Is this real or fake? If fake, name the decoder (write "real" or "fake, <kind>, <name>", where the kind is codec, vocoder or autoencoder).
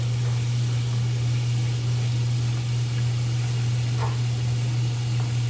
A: real